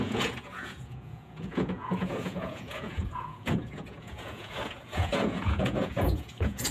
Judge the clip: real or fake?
fake